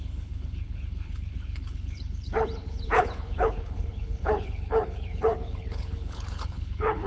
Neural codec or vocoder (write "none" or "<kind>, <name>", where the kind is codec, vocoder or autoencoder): codec, HILCodec